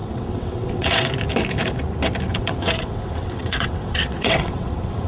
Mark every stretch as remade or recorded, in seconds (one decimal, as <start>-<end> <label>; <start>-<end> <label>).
0.0-1.1 remade; 1.1-2.3 recorded; 2.3-5.1 remade